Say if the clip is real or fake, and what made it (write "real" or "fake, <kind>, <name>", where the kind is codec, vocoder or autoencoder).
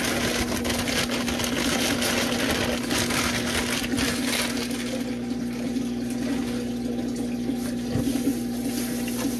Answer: real